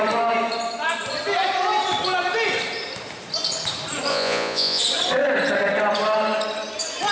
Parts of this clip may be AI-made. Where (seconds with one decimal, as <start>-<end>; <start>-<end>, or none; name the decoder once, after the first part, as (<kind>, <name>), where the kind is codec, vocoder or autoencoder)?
4.1-4.8 (vocoder, Vocos)